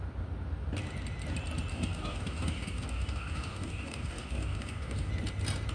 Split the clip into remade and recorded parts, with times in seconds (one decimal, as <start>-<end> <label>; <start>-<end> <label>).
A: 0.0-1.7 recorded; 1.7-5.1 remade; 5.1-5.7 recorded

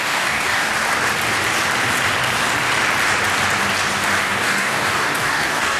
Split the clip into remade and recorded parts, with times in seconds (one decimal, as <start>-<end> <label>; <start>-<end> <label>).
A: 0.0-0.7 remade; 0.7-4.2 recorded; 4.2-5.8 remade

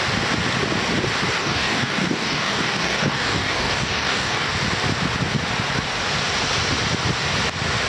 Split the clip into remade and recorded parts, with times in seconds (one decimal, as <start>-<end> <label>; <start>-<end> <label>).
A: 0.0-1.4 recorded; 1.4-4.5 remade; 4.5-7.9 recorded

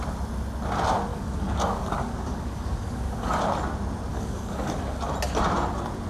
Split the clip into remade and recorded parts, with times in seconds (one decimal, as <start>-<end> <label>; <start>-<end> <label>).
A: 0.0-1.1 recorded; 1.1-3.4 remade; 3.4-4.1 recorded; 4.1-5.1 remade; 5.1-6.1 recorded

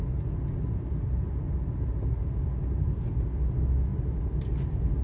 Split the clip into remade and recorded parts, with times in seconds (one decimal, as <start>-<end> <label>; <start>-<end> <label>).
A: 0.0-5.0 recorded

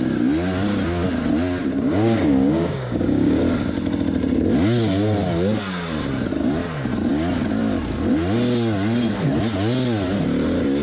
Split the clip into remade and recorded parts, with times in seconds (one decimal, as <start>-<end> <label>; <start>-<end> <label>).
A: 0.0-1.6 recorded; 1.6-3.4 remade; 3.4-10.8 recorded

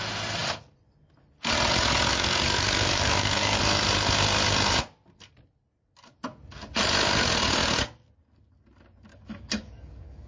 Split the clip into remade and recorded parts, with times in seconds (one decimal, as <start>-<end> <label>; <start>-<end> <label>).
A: 0.0-2.1 recorded; 2.1-3.6 remade; 3.6-9.1 recorded; 9.1-10.3 remade

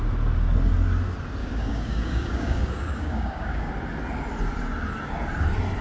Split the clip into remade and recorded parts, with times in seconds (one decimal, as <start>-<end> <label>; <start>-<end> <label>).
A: 0.0-1.4 recorded; 1.4-3.7 remade; 3.7-5.8 recorded